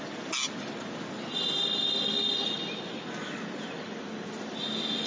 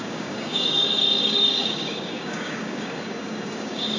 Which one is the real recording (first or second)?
first